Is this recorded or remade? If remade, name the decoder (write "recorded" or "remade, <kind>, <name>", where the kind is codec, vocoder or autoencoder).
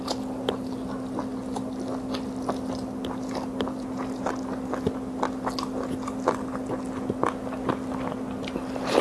recorded